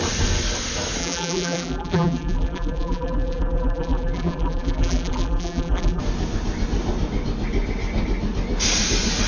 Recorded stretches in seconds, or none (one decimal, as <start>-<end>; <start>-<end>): 0.0-1.0; 6.0-9.3